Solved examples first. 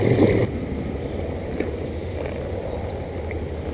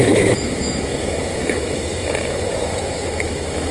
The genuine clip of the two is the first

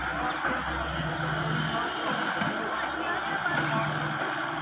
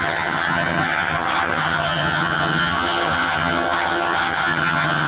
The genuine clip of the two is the first